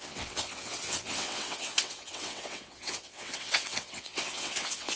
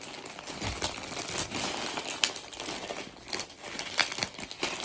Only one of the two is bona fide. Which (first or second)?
second